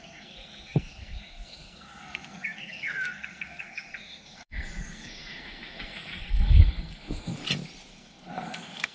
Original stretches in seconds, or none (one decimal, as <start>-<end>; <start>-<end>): 7.4-7.9